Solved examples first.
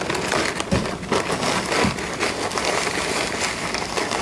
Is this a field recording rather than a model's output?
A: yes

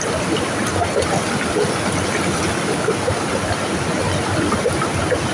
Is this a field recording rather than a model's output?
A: yes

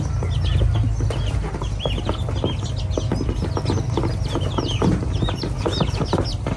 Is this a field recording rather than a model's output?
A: yes